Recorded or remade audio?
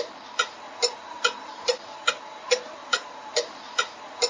recorded